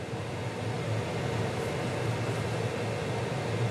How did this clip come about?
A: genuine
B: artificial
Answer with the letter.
A